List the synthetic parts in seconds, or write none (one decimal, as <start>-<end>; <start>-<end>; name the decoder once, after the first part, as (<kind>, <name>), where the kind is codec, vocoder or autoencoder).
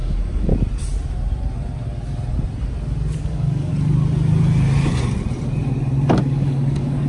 0.0-0.5 (codec, DAC); 3.2-3.7; 6.2-7.1